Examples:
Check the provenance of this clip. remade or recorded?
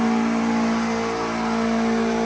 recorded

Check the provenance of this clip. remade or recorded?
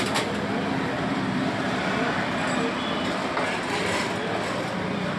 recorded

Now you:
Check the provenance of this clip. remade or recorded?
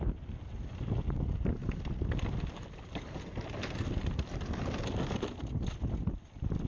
recorded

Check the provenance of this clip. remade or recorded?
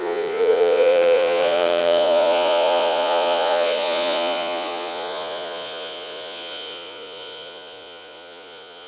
remade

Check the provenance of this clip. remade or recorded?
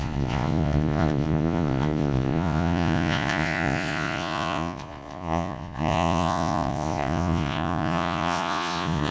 remade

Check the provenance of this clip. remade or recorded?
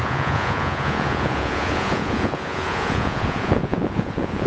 remade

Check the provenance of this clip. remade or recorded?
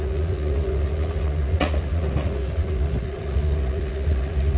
remade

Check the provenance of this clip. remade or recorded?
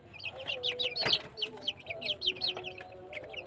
recorded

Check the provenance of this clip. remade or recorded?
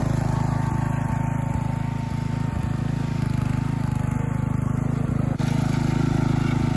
recorded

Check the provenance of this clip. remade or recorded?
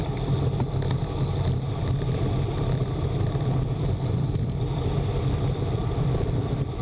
recorded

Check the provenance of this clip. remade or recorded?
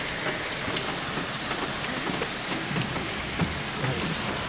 recorded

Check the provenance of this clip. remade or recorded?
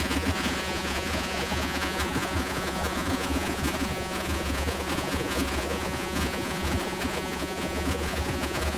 remade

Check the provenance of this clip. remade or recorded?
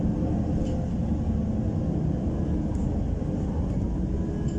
recorded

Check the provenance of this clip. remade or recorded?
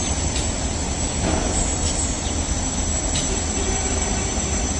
recorded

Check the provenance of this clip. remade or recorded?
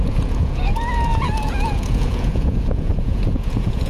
remade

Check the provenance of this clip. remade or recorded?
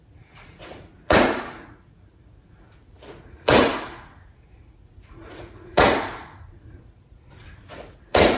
remade